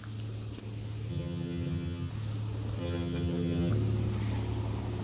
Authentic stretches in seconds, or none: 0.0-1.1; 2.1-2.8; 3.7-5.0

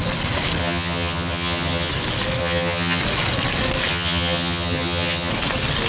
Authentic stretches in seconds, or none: 0.0-0.6; 1.9-2.4; 3.0-3.9; 5.3-5.9

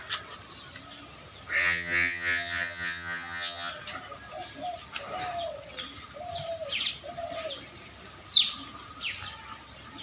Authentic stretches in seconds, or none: 0.0-1.6; 3.7-10.0